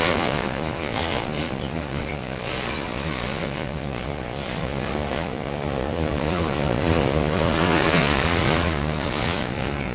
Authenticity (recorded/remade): remade